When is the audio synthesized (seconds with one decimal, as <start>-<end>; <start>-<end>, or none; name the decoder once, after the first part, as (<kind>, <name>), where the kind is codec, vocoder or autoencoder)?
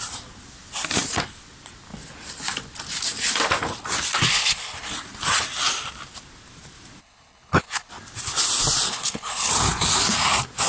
4.3-4.9 (codec, HILCodec); 7.0-7.9; 8.9-9.5